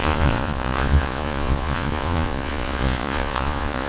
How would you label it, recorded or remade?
remade